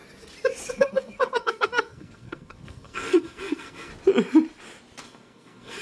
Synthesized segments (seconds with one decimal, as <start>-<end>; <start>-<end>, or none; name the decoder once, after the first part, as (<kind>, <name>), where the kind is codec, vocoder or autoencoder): 0.7-3.9 (codec, SNAC); 5.0-5.8